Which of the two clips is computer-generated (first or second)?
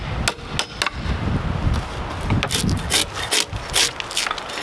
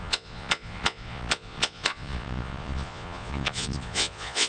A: second